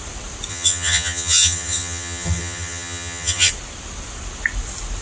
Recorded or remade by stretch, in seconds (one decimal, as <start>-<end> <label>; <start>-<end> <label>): 0.0-0.5 recorded; 0.5-3.5 remade; 3.5-5.0 recorded